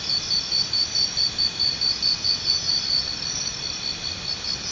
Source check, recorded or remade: recorded